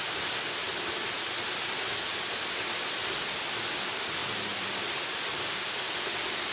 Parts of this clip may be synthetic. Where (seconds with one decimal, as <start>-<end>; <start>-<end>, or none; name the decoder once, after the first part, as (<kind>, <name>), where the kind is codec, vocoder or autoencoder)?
none